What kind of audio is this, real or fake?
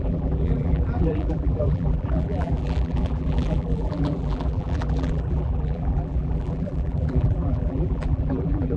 fake